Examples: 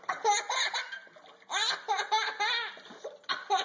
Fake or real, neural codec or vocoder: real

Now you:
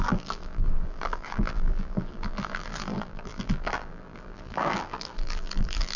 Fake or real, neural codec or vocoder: fake, vocoder, BigVGAN v2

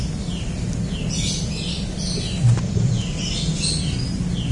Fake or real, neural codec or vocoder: real